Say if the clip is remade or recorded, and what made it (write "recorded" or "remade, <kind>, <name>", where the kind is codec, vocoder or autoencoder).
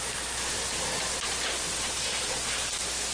recorded